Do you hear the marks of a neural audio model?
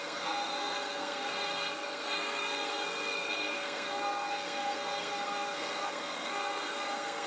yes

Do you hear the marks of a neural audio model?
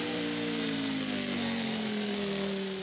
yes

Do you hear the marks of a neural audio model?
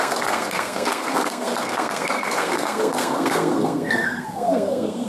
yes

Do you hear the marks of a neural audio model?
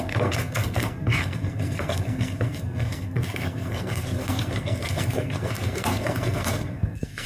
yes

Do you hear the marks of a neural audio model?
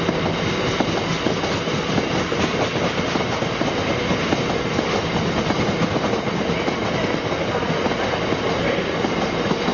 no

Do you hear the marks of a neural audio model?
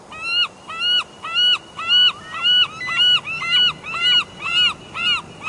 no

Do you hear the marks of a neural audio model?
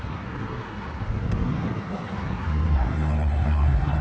yes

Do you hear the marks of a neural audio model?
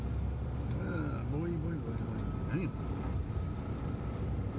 no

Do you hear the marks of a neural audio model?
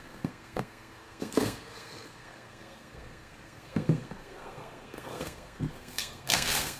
yes